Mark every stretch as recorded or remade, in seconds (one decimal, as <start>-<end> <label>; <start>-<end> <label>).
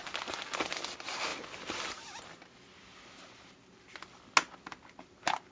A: 0.0-5.5 recorded